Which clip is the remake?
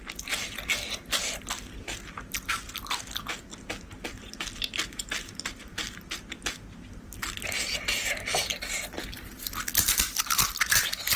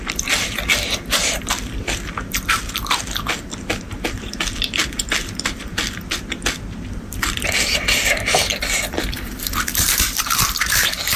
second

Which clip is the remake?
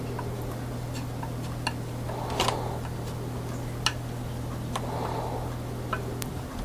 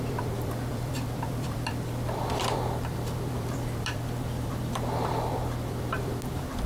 second